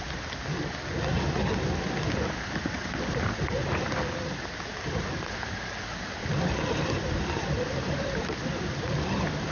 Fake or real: real